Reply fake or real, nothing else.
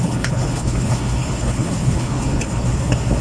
fake